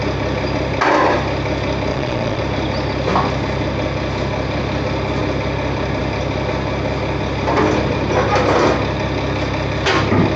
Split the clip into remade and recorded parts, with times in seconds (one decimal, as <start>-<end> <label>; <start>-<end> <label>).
0.0-1.9 recorded; 1.9-2.4 remade; 2.4-10.4 recorded